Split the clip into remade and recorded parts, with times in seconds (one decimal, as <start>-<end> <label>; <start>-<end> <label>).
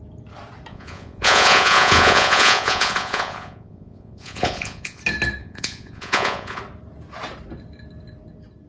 0.0-0.7 recorded; 0.7-5.0 remade; 5.0-5.4 recorded; 5.4-6.6 remade; 6.6-8.7 recorded